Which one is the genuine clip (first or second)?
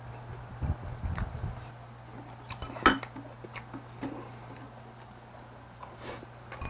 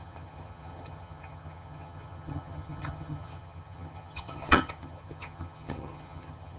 first